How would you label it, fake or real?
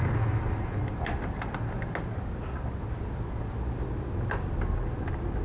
real